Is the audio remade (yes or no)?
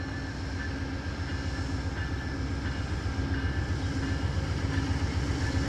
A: no